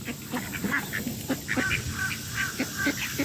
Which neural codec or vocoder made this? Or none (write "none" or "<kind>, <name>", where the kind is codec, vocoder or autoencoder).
none